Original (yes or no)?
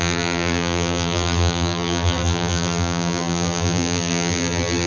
no